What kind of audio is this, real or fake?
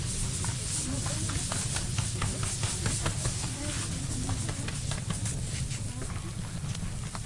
real